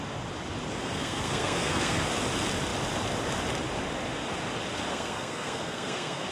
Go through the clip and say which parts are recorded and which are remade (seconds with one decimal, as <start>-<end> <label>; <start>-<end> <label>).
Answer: 0.0-0.8 recorded; 0.8-2.0 remade; 2.0-4.9 recorded; 4.9-6.3 remade